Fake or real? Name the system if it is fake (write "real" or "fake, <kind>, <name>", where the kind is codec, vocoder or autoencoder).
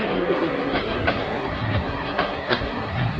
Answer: fake, codec, SNAC